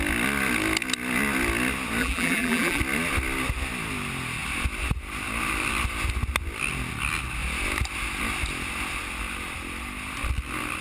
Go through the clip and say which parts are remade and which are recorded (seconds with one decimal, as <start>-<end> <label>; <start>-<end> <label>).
0.0-2.0 recorded; 2.0-2.8 remade; 2.8-10.8 recorded